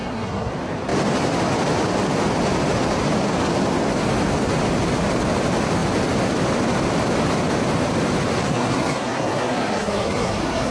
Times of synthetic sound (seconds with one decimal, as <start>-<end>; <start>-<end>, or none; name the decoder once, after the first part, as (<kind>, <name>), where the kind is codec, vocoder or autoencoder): 0.0-0.5 (codec, SNAC); 8.4-10.7